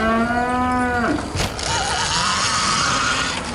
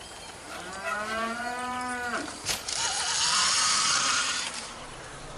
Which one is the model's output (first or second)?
second